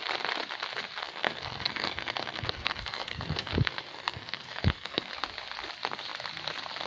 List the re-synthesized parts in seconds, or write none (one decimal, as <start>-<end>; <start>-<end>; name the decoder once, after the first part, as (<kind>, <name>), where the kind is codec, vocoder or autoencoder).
1.0-5.1 (codec, SNAC)